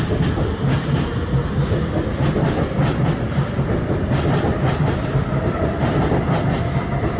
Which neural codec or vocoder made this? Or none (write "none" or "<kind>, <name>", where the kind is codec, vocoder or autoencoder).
vocoder, BigVGAN v2